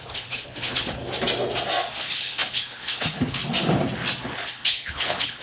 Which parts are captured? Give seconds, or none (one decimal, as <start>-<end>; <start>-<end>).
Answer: 1.0-2.0; 3.4-4.5